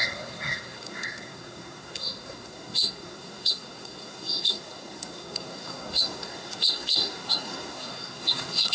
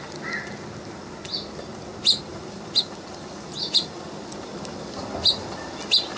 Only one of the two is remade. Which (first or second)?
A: first